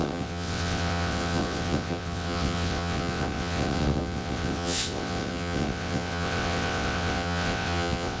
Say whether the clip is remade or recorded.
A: remade